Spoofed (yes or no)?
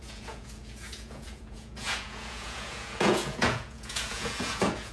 yes